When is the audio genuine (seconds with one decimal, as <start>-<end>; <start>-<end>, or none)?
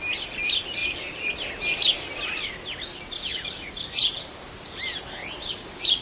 0.0-0.8; 1.3-3.3